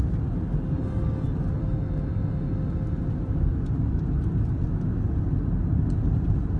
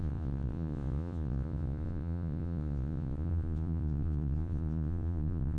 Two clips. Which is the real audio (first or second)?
first